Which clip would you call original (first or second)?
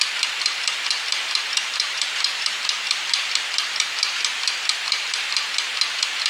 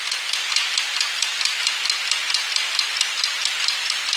second